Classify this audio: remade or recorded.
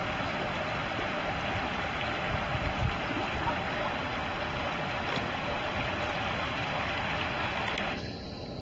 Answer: recorded